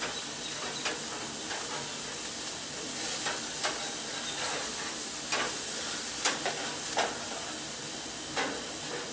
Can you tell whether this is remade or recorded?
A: recorded